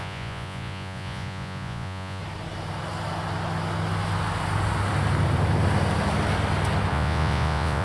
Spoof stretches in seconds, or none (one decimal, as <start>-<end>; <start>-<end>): 0.0-2.2; 6.9-7.8